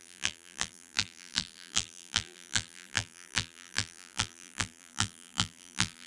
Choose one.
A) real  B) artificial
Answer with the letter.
B